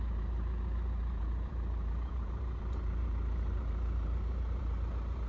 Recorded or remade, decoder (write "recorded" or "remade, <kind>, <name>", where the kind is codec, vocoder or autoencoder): remade, vocoder, BigVGAN v2